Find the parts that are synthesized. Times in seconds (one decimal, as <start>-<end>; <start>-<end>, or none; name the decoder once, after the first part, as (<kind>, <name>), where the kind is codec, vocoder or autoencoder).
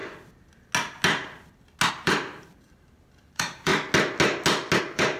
1.9-3.7 (vocoder, BigVGAN v2); 4.8-5.2